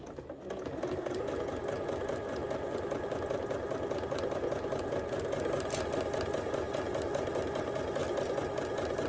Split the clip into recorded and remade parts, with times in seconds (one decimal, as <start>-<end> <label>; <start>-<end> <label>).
0.0-9.1 recorded